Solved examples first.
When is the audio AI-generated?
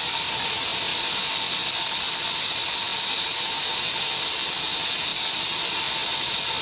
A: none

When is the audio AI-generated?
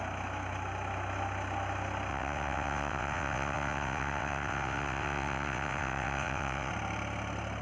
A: 2.1-6.7 (vocoder, WaveNeXt)